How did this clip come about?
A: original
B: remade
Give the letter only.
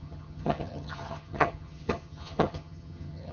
B